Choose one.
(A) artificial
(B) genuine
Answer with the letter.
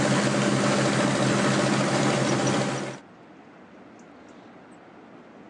B